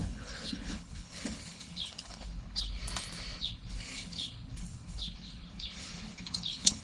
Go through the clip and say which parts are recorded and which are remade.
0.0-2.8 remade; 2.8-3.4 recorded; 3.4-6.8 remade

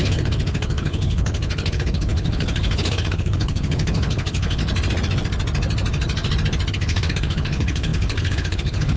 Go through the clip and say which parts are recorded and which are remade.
0.0-4.6 remade; 4.6-6.7 recorded; 6.7-9.0 remade

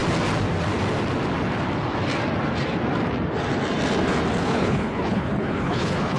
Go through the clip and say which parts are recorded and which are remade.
0.0-4.4 recorded; 4.4-6.2 remade

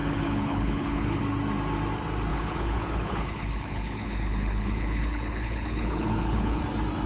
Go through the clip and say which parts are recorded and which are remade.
0.0-1.2 remade; 1.2-2.3 recorded; 2.3-6.6 remade; 6.6-7.1 recorded

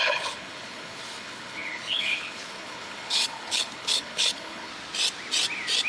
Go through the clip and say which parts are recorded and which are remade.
0.0-4.7 remade; 4.7-5.9 recorded

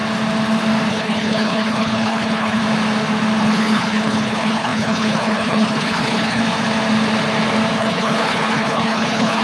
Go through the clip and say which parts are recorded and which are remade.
0.0-0.9 recorded; 0.9-2.6 remade; 2.6-3.4 recorded; 3.4-6.4 remade; 6.4-7.8 recorded; 7.8-9.4 remade